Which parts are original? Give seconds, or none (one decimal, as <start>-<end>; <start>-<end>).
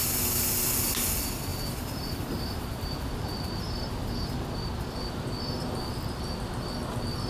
0.0-1.5; 5.3-7.3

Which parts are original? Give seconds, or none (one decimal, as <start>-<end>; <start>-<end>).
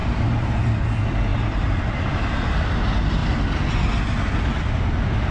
0.5-1.3; 2.7-5.3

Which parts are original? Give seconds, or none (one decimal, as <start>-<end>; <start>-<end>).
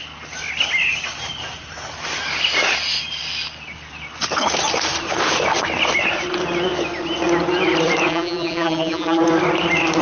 0.0-8.1; 9.2-10.0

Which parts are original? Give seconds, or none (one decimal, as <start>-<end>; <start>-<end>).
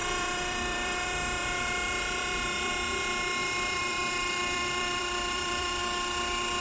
2.7-3.4; 5.8-6.6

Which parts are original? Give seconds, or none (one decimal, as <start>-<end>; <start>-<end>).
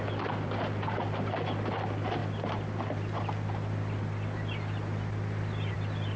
0.0-6.2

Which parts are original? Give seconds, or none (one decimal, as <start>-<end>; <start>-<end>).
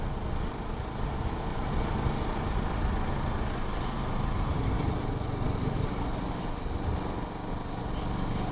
0.0-1.5; 6.4-8.5